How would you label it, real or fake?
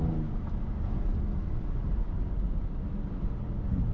real